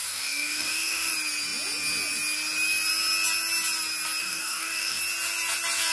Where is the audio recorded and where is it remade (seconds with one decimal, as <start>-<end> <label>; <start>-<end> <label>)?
0.0-1.1 remade; 1.1-4.2 recorded; 4.2-5.0 remade; 5.0-5.9 recorded